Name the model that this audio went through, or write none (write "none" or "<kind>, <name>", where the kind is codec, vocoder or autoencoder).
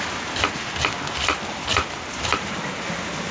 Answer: none